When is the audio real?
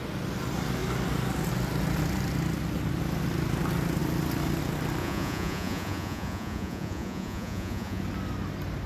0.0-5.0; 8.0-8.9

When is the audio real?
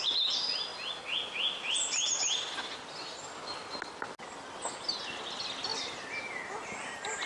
0.0-7.3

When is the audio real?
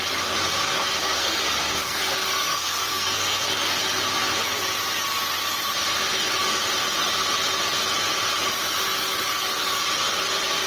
0.0-1.0; 3.8-10.7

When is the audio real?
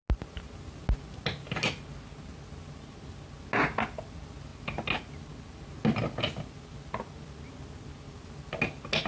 0.0-9.1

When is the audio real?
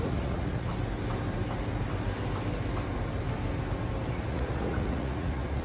0.7-4.1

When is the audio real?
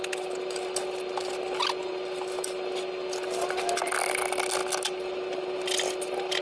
0.0-6.4